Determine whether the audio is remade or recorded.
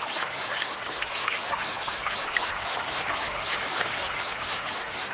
remade